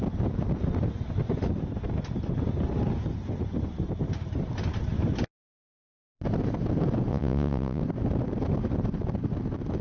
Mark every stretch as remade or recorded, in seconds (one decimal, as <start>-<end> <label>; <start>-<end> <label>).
0.0-7.1 recorded; 7.1-7.8 remade; 7.8-9.8 recorded

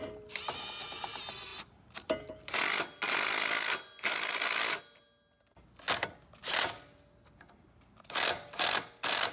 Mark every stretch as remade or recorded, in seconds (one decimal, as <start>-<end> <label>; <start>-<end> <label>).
0.0-9.3 recorded

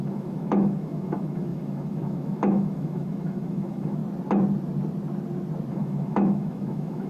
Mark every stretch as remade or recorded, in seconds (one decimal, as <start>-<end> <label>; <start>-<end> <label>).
0.0-4.0 remade; 4.0-5.7 recorded; 5.7-7.1 remade

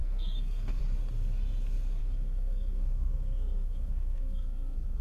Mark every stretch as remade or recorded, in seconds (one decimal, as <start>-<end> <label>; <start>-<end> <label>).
0.0-0.8 remade; 0.8-2.0 recorded; 2.0-5.0 remade

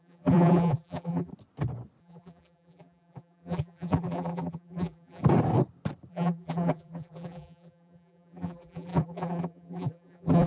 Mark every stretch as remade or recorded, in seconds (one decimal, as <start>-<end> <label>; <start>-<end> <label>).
0.0-1.3 remade; 1.3-2.0 recorded; 2.0-5.2 remade; 5.2-6.1 recorded; 6.1-10.5 remade

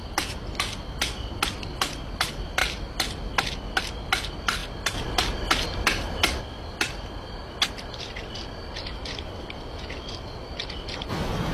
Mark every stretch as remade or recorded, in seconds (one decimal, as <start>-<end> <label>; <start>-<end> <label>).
0.0-11.5 recorded

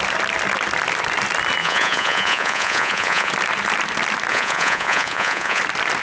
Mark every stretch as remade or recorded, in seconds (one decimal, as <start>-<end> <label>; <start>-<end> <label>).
0.0-1.6 recorded; 1.6-3.3 remade; 3.3-4.3 recorded; 4.3-5.6 remade; 5.6-6.0 recorded